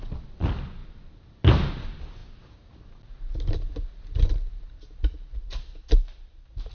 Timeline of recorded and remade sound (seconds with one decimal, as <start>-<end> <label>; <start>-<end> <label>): 0.0-6.7 recorded

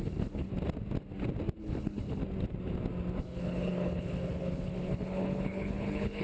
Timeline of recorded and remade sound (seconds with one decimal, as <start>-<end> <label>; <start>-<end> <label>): 0.0-0.5 remade; 0.5-1.6 recorded; 1.6-2.2 remade; 2.2-3.2 recorded; 3.2-6.2 remade